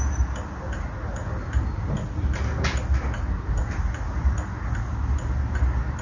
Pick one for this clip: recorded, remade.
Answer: recorded